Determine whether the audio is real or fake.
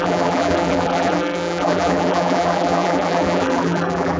fake